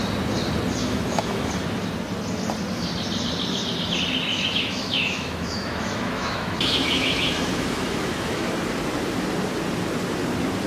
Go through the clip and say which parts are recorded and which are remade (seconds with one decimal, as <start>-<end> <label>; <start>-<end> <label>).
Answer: 0.0-0.8 recorded; 0.8-1.5 remade; 1.5-4.3 recorded; 4.3-8.5 remade; 8.5-10.7 recorded